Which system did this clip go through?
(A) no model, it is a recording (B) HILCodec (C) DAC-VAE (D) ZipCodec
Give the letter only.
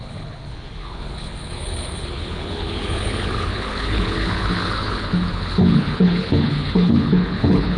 B